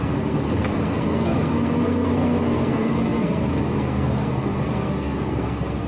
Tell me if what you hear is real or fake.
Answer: fake